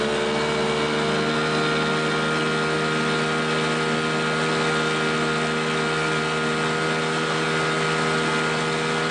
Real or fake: real